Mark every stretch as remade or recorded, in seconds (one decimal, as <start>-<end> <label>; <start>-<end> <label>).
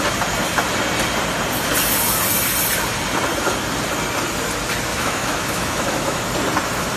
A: 0.0-4.9 recorded; 4.9-6.2 remade; 6.2-7.0 recorded